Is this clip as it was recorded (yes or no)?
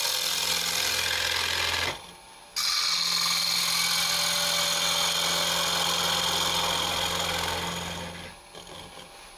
yes